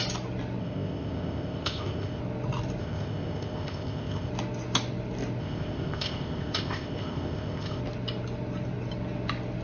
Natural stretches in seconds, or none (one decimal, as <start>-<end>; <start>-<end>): 0.0-0.6; 2.2-2.8; 4.3-5.4; 7.8-9.6